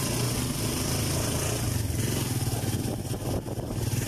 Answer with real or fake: real